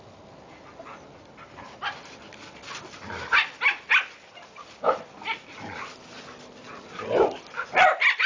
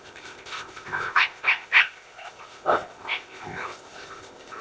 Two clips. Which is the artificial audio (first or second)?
second